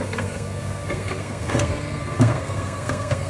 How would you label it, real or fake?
fake